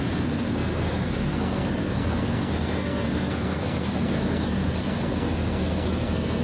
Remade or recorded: remade